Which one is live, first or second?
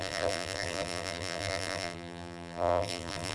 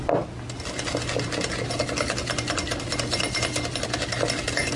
second